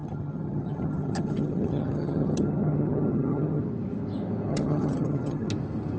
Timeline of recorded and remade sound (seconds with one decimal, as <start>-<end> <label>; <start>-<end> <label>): 0.0-3.6 remade; 3.6-4.5 recorded; 4.5-5.5 remade; 5.5-6.0 recorded